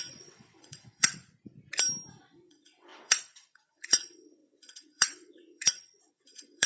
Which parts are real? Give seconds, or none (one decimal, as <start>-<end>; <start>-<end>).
1.2-2.2